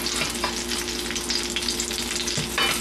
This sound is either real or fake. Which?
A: real